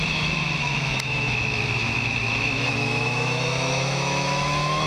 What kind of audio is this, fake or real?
fake